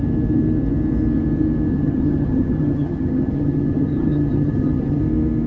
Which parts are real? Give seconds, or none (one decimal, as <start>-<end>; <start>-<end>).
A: 0.0-1.7; 5.0-5.5